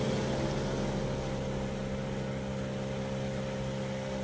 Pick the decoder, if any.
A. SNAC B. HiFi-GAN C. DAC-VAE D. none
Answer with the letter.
D